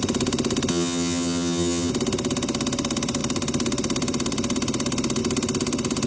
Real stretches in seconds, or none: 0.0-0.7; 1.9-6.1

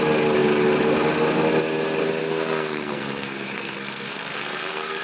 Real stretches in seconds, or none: 0.0-2.2

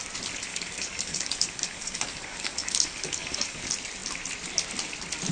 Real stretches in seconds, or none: 0.0-0.5; 3.6-5.3

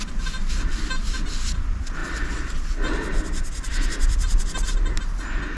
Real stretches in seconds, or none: 0.0-5.6

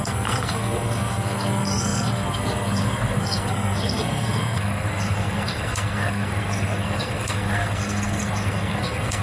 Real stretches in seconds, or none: none

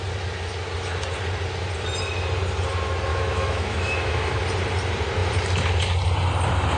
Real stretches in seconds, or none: 0.0-3.1; 4.4-6.8